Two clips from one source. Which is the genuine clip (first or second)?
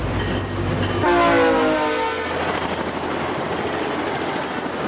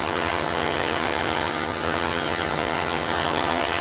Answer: first